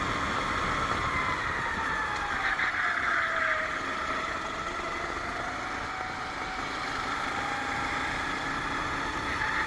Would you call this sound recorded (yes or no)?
yes